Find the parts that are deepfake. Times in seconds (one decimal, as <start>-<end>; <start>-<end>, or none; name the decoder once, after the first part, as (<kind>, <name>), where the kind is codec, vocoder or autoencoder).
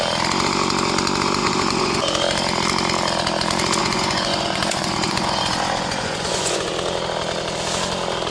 1.4-2.0 (vocoder, Vocos); 3.8-6.7